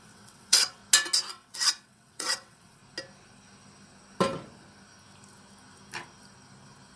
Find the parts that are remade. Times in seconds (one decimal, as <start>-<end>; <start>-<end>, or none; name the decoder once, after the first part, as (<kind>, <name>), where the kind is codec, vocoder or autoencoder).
0.0-0.8 (vocoder, WaveNeXt); 1.3-2.8